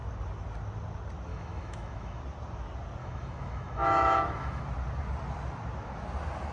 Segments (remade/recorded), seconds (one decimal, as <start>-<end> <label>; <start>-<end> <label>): 0.0-1.3 recorded; 1.3-2.2 remade; 2.2-3.0 recorded; 3.0-4.6 remade; 4.6-6.5 recorded